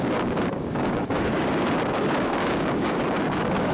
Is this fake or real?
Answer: fake